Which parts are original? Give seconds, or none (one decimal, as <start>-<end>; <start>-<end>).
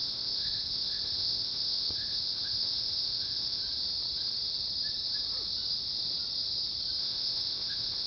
3.6-7.0